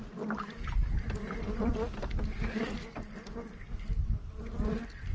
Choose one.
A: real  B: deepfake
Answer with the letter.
A